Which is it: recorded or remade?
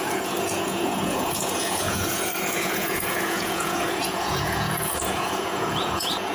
remade